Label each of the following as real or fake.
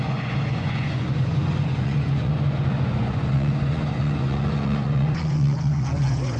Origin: fake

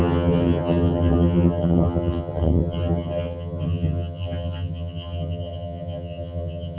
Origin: fake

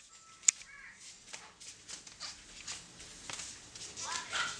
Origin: real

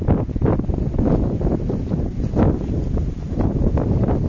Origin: real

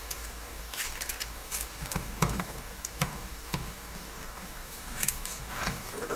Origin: fake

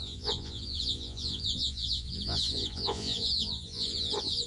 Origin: fake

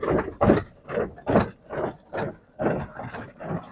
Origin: real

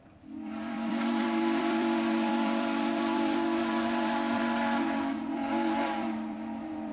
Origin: fake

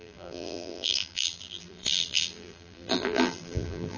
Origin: fake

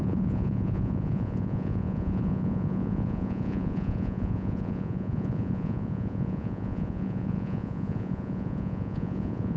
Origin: fake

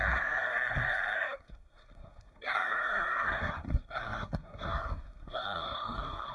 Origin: fake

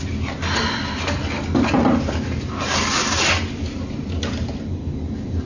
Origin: real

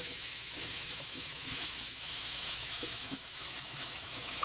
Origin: fake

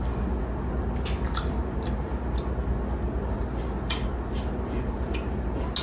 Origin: real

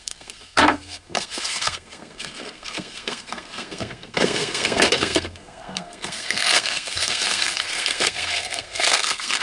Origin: fake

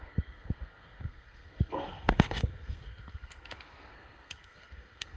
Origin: fake